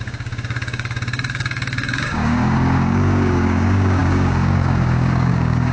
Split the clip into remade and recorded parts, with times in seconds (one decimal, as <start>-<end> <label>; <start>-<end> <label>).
0.0-5.7 remade